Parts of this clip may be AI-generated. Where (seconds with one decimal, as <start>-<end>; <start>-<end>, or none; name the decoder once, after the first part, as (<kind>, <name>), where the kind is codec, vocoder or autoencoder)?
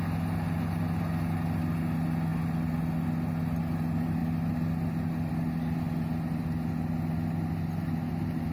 none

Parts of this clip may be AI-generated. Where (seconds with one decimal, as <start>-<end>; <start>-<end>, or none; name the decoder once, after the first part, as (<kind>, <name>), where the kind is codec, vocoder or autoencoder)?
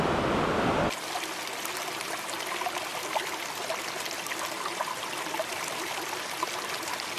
2.9-6.1 (vocoder, BigVGAN v2)